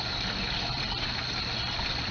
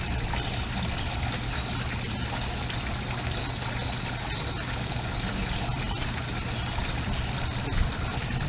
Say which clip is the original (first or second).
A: first